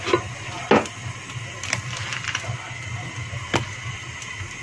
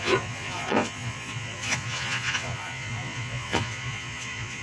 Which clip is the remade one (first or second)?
second